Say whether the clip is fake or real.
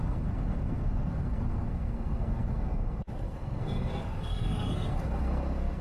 fake